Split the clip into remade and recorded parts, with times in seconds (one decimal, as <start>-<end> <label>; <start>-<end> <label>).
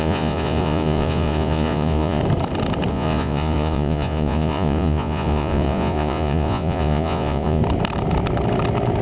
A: 0.0-2.2 remade; 2.2-2.9 recorded; 2.9-7.6 remade; 7.6-9.0 recorded